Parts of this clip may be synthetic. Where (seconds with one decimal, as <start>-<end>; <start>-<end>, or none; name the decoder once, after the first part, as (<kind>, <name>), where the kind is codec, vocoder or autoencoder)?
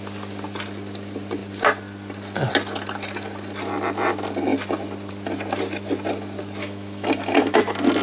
6.6-7.6 (autoencoder, DAC-VAE)